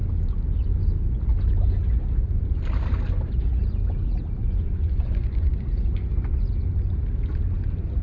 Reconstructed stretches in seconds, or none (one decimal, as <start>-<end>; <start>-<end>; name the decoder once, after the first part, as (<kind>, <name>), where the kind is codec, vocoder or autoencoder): 4.4-5.5 (vocoder, Vocos)